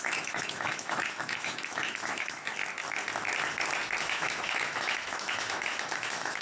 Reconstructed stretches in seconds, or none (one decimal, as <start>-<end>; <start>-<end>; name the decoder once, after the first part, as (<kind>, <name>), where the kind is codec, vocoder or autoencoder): 0.0-2.5 (autoencoder, DAC-VAE); 4.0-6.4